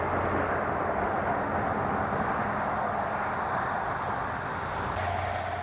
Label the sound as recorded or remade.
recorded